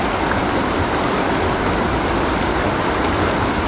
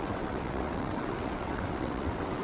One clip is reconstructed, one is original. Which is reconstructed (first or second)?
second